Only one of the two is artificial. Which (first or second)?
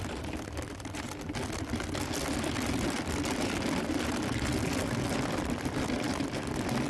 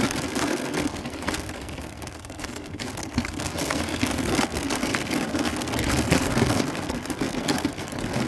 second